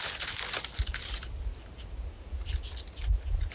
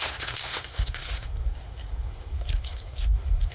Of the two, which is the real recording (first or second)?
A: first